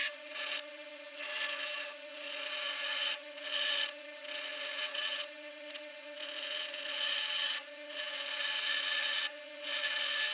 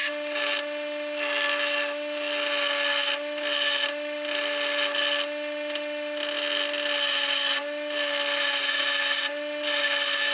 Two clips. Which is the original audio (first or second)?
second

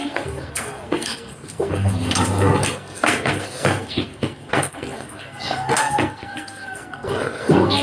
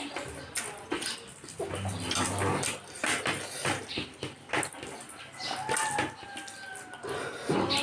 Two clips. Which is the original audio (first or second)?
second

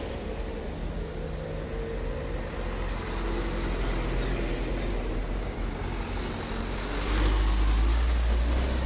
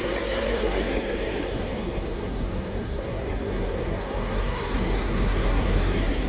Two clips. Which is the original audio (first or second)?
first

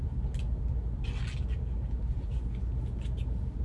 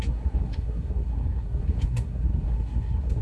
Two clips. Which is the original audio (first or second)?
first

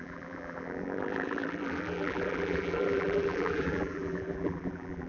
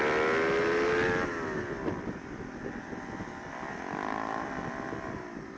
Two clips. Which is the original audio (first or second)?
second